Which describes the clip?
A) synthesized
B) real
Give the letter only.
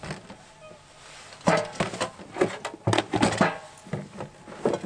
B